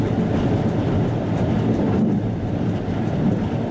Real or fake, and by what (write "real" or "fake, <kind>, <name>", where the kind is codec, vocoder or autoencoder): real